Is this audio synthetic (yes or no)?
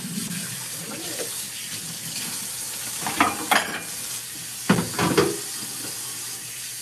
no